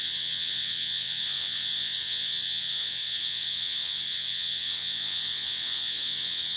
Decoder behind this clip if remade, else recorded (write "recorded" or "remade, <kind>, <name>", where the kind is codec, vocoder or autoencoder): remade, vocoder, WaveNeXt